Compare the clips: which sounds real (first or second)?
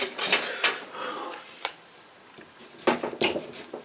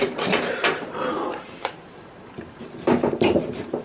first